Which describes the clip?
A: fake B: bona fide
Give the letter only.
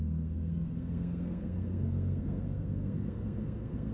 A